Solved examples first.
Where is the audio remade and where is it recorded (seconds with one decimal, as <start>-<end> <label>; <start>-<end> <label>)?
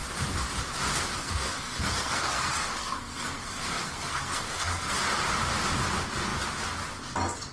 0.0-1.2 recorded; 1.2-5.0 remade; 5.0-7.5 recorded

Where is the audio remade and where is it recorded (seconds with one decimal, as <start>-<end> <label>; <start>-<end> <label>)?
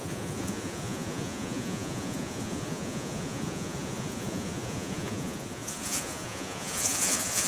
0.0-7.5 remade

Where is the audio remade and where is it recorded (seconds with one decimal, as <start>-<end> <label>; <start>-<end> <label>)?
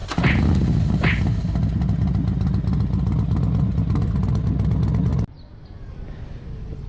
0.0-6.9 recorded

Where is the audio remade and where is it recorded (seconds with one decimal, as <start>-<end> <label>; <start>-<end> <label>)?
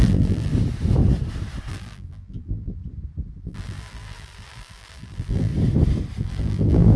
0.0-0.5 remade; 0.5-1.7 recorded; 1.7-2.8 remade; 2.8-3.4 recorded; 3.4-5.5 remade; 5.5-6.2 recorded; 6.2-7.0 remade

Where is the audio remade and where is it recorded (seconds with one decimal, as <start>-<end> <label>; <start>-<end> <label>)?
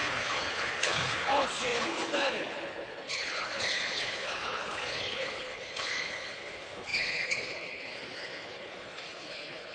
0.0-9.7 remade